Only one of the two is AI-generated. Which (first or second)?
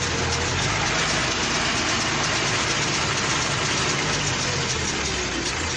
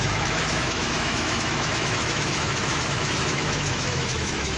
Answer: second